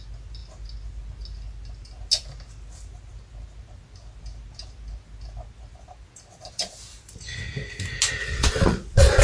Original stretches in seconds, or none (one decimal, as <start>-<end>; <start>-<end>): 0.0-8.2

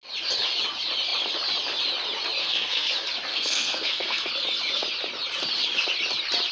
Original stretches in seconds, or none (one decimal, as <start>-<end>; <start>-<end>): 0.0-2.4; 2.9-3.3; 4.3-6.5

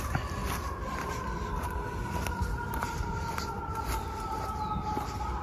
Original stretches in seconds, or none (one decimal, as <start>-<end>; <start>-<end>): 0.0-0.4; 3.6-5.4

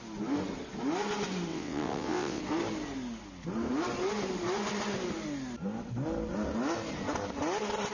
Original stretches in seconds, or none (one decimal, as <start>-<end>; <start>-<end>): 0.0-1.5; 2.4-7.9

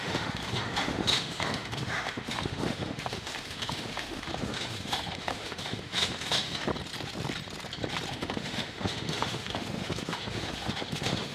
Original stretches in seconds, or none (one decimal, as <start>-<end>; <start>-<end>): 6.7-8.1

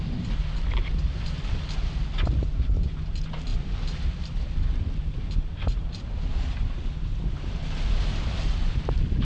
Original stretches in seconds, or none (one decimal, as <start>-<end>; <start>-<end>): 0.0-3.5; 5.8-9.2